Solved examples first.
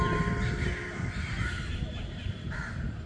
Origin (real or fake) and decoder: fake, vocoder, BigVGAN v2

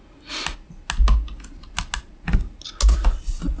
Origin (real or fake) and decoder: real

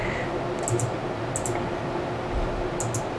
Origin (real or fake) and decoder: real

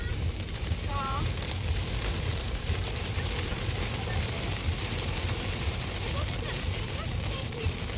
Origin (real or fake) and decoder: fake, vocoder, BigVGAN v2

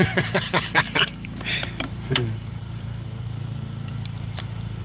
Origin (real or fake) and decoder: fake, vocoder, BigVGAN v2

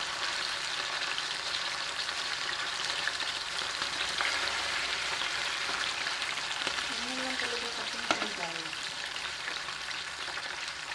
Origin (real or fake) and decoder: fake, vocoder, BigVGAN v2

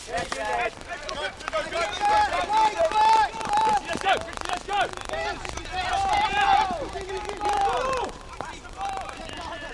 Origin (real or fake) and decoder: fake, vocoder, BigVGAN v2